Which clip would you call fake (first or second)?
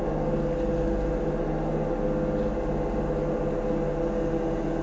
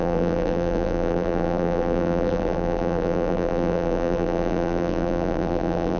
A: second